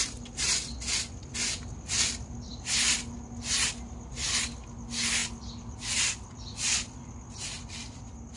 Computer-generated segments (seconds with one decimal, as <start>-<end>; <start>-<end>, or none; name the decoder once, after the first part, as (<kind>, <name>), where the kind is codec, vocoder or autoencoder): none